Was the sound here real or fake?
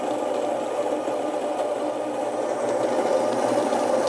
real